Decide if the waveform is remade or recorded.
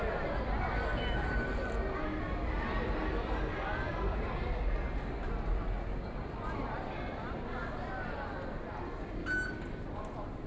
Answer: recorded